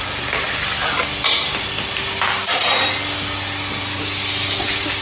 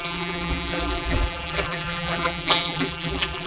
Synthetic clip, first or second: second